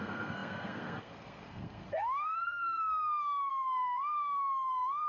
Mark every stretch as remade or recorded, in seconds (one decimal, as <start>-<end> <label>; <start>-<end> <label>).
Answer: 0.0-5.1 remade